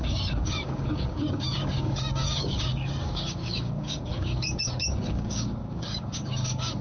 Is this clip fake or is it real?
fake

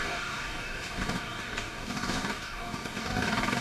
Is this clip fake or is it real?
fake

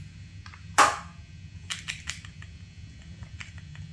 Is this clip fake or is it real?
real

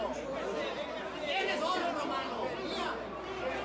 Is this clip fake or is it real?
real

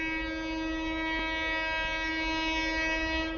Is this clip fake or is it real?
real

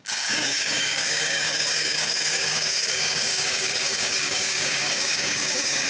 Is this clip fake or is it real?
fake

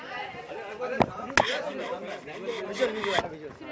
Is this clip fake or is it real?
real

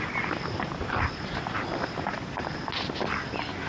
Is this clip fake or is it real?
real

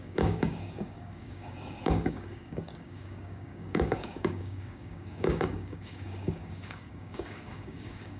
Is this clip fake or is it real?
fake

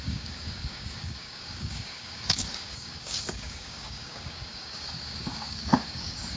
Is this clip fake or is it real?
fake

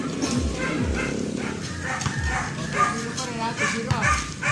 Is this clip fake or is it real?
real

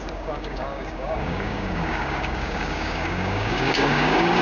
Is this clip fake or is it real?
fake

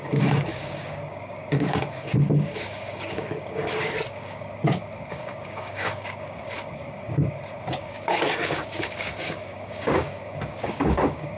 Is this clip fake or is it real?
fake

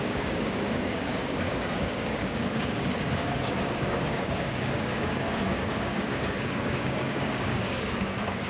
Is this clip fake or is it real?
fake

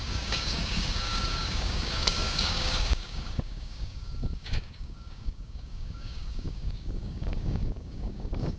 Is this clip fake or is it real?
fake